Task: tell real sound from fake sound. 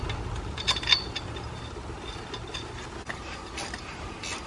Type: real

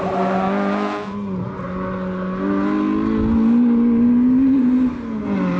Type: real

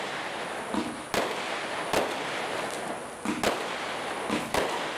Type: real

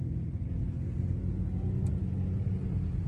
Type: real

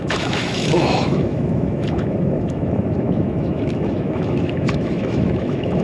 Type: fake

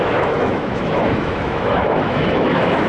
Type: fake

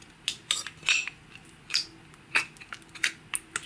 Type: real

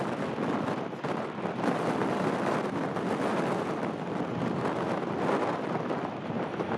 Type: real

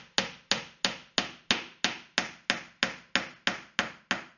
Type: real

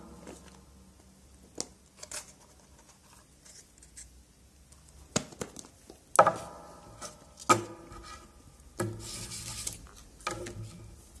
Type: real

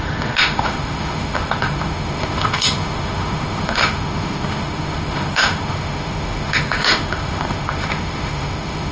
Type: fake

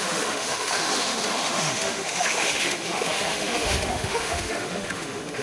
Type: fake